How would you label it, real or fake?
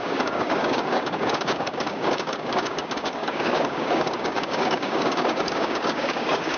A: fake